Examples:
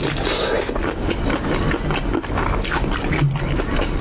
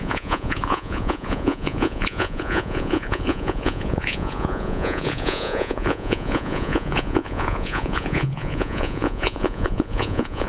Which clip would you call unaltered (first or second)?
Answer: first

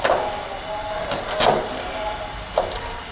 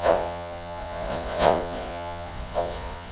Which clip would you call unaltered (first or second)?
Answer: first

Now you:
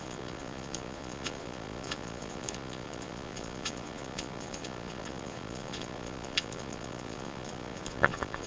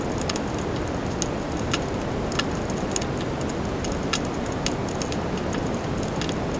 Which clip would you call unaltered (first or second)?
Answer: second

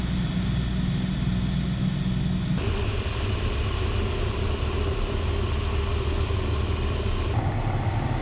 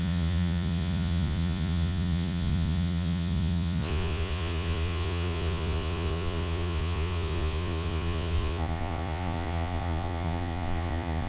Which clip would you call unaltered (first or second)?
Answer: first